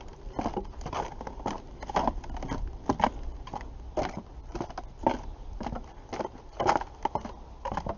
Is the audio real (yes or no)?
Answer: yes